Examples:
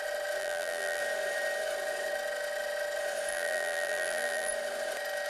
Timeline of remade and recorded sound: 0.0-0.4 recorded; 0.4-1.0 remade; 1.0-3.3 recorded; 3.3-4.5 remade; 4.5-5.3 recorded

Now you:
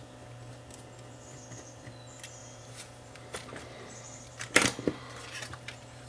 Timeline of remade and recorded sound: 0.0-2.4 recorded; 2.4-6.1 remade

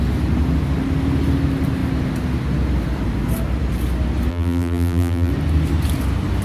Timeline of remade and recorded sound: 0.0-4.3 recorded; 4.3-5.3 remade; 5.3-6.4 recorded

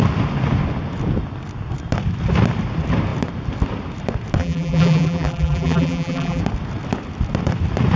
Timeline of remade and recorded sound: 0.0-4.4 recorded; 4.4-6.4 remade; 6.4-8.0 recorded

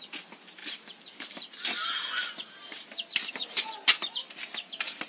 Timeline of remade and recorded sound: 0.0-5.1 remade

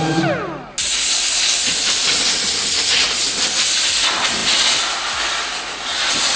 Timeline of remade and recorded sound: 0.0-6.4 recorded

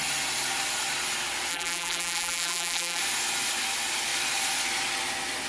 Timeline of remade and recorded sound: 0.0-1.5 recorded; 1.5-3.0 remade; 3.0-5.5 recorded

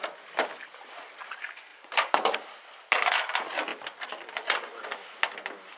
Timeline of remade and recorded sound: 0.0-1.7 recorded; 1.7-2.6 remade; 2.6-3.7 recorded; 3.7-4.8 remade; 4.8-5.8 recorded